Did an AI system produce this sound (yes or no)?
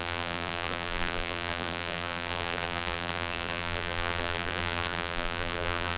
yes